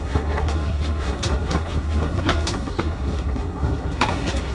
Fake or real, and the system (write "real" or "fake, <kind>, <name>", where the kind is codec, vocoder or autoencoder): fake, codec, SNAC